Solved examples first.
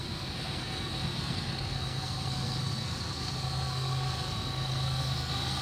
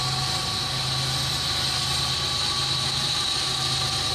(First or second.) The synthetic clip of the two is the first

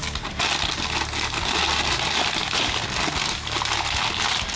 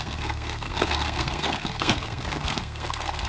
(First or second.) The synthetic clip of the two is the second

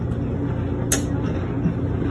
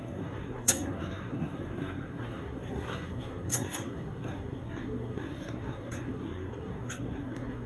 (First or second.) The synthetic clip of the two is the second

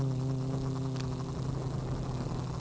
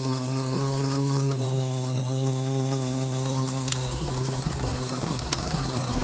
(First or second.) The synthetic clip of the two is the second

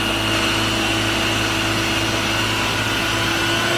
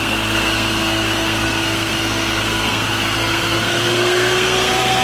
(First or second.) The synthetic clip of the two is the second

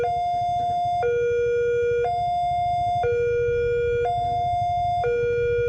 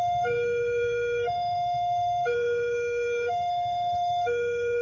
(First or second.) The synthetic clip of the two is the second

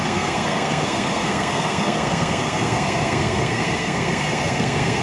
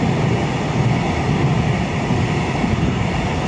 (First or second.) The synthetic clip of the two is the first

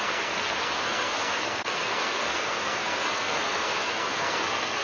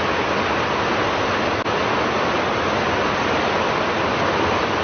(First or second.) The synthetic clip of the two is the first